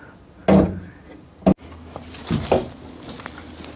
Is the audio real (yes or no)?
yes